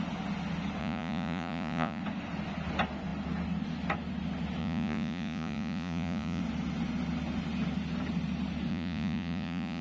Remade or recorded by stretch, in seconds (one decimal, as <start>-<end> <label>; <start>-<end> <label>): 0.0-0.8 recorded; 0.8-2.0 remade; 2.0-4.6 recorded; 4.6-6.4 remade; 6.4-8.7 recorded; 8.7-9.8 remade